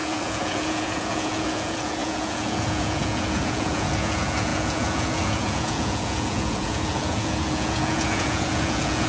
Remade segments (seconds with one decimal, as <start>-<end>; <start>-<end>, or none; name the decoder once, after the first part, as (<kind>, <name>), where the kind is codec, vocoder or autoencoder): 0.0-9.1 (vocoder, Vocos)